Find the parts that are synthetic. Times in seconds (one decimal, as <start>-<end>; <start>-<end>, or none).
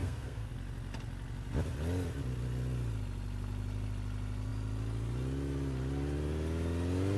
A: 0.0-0.5